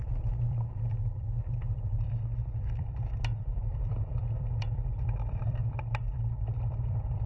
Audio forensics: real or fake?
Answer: fake